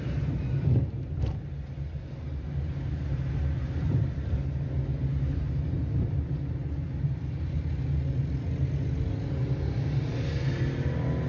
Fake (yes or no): no